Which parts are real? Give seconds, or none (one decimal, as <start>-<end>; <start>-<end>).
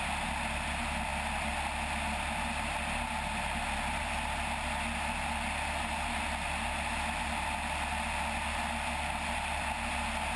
0.0-10.4